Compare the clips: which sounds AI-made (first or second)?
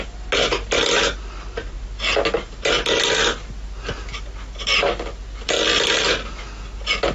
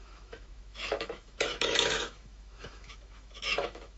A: second